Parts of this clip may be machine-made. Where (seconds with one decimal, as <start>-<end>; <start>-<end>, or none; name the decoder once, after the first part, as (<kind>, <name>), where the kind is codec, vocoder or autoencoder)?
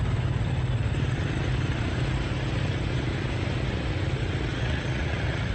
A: 4.5-5.5 (vocoder, Vocos)